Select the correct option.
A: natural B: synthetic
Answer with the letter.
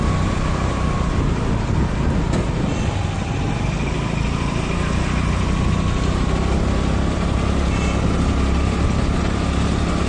A